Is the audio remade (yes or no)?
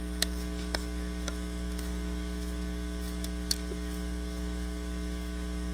yes